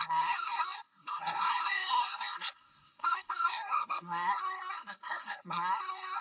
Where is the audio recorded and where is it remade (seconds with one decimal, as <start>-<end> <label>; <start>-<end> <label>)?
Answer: 0.0-6.2 remade